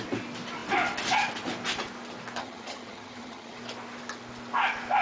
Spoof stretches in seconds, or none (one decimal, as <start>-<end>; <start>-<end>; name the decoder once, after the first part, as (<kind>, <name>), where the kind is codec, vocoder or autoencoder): 2.4-3.6 (vocoder, HiFi-GAN)